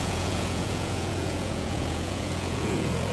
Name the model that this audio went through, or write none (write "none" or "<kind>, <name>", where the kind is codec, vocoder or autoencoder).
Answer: vocoder, Vocos